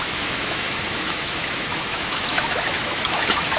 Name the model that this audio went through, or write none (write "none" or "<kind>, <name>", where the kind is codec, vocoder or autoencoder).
autoencoder, DAC-VAE